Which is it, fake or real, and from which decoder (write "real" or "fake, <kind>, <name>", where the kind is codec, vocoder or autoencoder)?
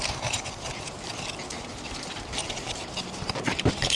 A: fake, vocoder, BigVGAN v2